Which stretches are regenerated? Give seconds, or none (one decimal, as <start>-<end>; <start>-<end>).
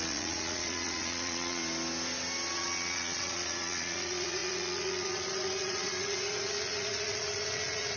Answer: 0.0-1.6; 2.5-8.0